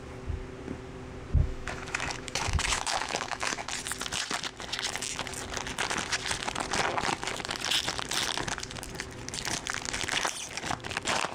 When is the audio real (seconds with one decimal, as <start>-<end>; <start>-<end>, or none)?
0.0-1.4; 3.7-11.3

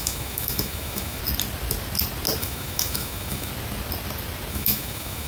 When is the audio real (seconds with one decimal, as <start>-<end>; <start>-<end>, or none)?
1.2-2.4; 3.5-4.5

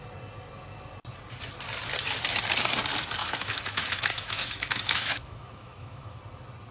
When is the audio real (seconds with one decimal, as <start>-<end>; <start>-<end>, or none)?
0.0-3.2; 6.2-6.7

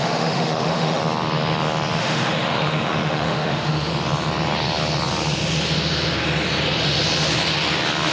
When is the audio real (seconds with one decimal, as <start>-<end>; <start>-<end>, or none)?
1.0-2.0; 3.9-8.1